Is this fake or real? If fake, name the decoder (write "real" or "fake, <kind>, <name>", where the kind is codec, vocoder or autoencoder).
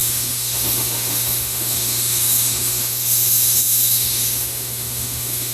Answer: fake, autoencoder, DAC-VAE